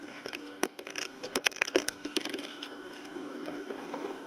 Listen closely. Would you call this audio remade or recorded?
remade